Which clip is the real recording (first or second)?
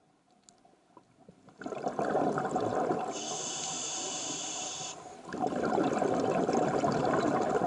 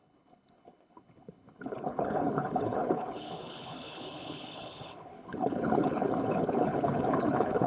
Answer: first